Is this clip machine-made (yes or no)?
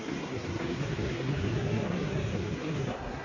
yes